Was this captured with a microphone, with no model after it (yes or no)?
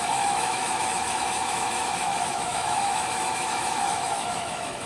no